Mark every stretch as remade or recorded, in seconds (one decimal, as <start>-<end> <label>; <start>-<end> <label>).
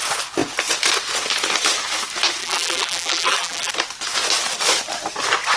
0.0-2.4 recorded; 2.4-3.7 remade; 3.7-5.6 recorded